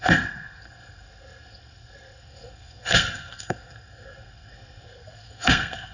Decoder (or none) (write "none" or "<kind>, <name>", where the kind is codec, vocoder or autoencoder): codec, SNAC